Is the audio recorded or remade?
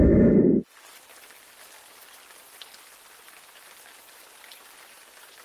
recorded